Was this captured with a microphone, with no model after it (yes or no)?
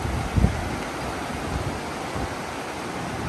yes